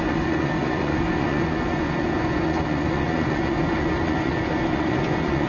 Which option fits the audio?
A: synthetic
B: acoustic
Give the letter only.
A